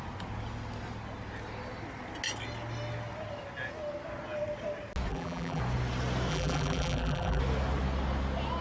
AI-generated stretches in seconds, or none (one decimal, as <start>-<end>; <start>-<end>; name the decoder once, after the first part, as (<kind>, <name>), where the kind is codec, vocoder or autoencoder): 5.1-5.6 (vocoder, BigVGAN v2); 6.3-7.4